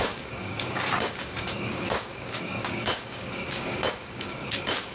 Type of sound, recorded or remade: remade